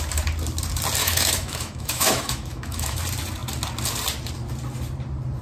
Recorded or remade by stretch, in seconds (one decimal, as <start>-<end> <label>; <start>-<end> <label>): 0.0-1.0 recorded; 1.0-3.0 remade; 3.0-5.4 recorded